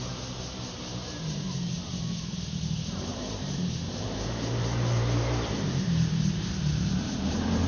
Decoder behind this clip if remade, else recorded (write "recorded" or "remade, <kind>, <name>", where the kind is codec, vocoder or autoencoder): remade, vocoder, BigVGAN v2